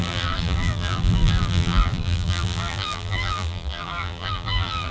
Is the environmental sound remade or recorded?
remade